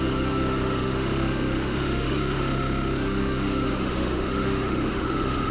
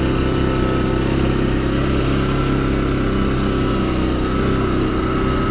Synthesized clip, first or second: first